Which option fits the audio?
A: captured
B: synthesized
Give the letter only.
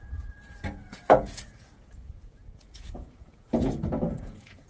B